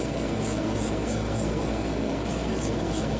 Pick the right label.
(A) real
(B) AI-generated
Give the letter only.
B